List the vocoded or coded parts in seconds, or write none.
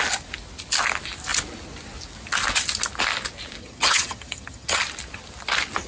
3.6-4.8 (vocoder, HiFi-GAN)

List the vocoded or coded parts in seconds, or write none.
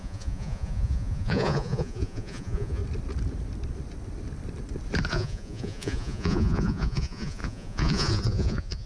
0.0-2.8 (vocoder, Vocos); 5.1-8.9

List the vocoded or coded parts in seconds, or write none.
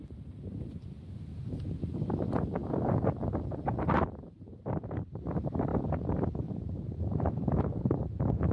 0.0-2.6 (vocoder, BigVGAN v2); 3.4-5.7; 6.4-8.5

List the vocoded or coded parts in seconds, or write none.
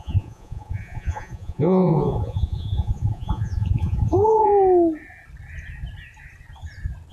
0.0-4.5 (vocoder, Vocos)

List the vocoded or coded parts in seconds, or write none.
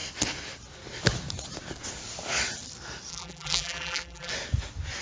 3.1-4.3 (vocoder, BigVGAN v2)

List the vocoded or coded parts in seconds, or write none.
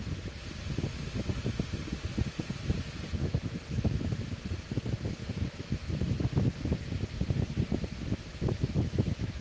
3.2-4.4 (autoencoder, DAC-VAE); 5.2-6.4; 8.3-9.4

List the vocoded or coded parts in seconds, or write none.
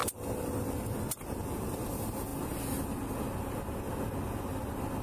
0.0-1.9 (vocoder, BigVGAN v2)